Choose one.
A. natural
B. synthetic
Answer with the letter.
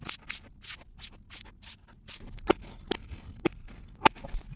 A